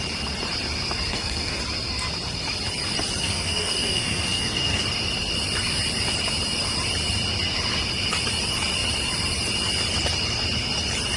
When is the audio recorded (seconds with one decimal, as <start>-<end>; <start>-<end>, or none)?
0.0-1.1; 1.6-3.2; 4.8-11.2